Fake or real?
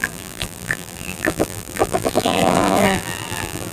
fake